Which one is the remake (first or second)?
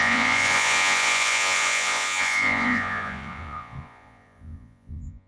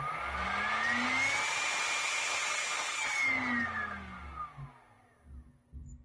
first